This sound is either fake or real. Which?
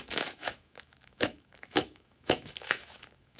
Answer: fake